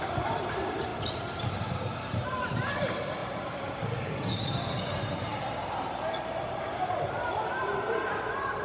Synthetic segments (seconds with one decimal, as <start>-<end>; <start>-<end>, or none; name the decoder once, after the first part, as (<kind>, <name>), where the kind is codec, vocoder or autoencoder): 0.0-8.6 (vocoder, BigVGAN v2)